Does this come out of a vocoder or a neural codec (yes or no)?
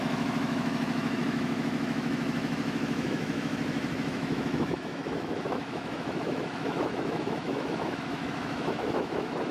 yes